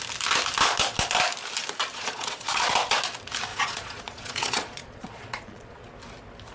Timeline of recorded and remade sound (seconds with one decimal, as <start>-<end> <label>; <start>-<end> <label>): 0.0-1.9 recorded; 1.9-2.7 remade; 2.7-3.5 recorded; 3.5-5.9 remade; 5.9-6.5 recorded